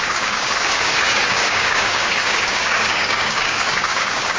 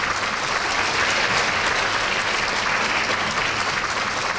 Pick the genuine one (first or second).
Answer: second